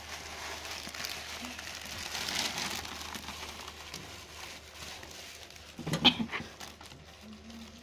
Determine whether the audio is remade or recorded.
recorded